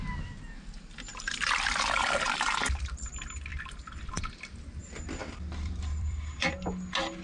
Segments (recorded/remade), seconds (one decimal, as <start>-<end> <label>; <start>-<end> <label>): 0.0-1.1 recorded; 1.1-3.1 remade; 3.1-3.5 recorded; 3.5-4.3 remade; 4.3-4.8 recorded; 4.8-6.5 remade; 6.5-7.2 recorded